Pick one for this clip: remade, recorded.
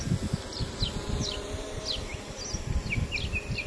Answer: recorded